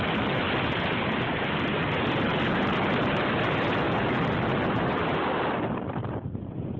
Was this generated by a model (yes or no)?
no